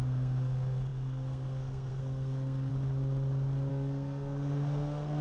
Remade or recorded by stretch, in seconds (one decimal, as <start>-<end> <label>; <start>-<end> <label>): 0.0-2.7 remade; 2.7-3.7 recorded; 3.7-5.2 remade